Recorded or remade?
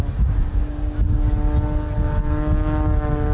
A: recorded